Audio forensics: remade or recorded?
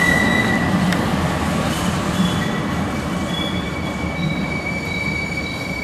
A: recorded